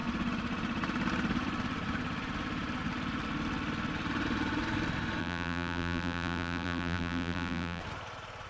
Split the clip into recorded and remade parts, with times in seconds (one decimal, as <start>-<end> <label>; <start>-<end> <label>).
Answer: 0.0-5.2 recorded; 5.2-7.8 remade; 7.8-8.5 recorded